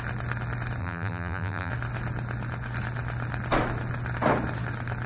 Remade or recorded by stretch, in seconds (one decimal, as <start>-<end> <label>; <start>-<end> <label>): 0.0-0.8 recorded; 0.8-1.7 remade; 1.7-5.1 recorded